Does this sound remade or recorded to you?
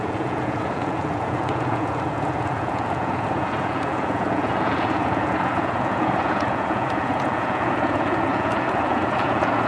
remade